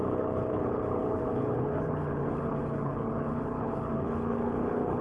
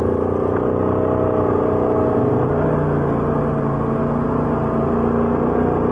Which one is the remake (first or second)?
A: first